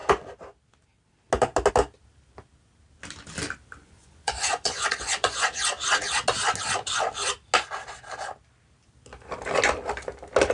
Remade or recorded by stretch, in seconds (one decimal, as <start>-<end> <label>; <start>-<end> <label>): 0.0-3.8 recorded; 3.8-5.5 remade; 5.5-10.5 recorded